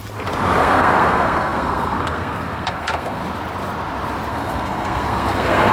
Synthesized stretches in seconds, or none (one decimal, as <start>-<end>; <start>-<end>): 0.6-3.2; 4.3-5.7